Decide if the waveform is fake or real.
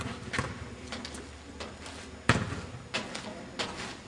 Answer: real